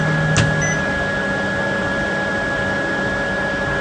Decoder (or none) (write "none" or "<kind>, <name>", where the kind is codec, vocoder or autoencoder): none